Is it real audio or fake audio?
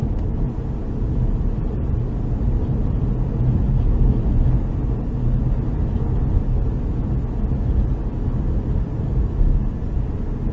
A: real